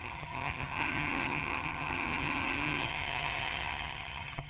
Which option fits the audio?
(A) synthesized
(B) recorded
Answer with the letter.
A